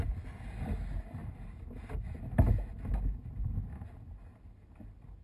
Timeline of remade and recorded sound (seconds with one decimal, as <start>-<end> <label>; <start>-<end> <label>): 0.0-5.2 recorded